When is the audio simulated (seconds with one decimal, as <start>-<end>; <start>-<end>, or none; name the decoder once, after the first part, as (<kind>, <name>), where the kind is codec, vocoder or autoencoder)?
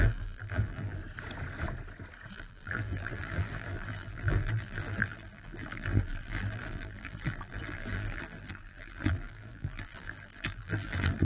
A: 0.0-1.0 (vocoder, BigVGAN v2); 2.3-11.2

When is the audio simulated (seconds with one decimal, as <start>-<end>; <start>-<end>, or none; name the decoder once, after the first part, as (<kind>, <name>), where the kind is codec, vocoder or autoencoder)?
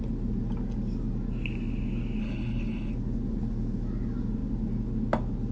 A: 2.2-2.9 (codec, HILCodec)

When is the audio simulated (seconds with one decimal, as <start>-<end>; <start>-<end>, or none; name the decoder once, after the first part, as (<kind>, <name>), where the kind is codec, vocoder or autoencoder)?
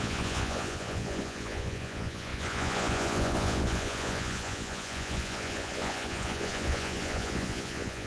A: 0.0-8.1 (vocoder, Vocos)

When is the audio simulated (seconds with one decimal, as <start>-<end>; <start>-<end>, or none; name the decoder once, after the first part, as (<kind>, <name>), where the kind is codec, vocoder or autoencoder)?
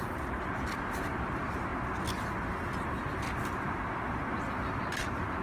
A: none